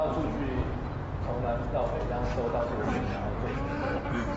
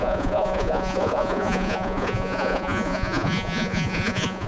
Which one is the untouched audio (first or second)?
first